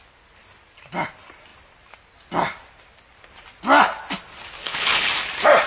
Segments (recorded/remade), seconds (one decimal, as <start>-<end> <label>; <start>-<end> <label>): 0.0-4.6 recorded; 4.6-5.1 remade; 5.1-5.7 recorded